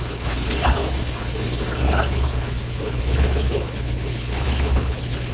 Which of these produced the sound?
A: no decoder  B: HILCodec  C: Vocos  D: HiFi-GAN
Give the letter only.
B